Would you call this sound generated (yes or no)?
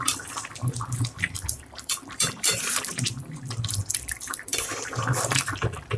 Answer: yes